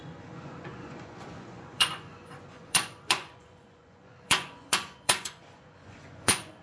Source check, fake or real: fake